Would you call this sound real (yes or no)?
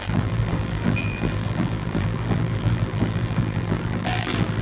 no